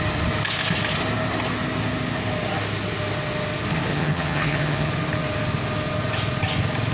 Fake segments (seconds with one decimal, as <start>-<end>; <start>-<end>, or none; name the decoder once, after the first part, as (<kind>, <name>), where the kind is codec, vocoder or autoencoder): 3.9-4.9 (vocoder, HiFi-GAN)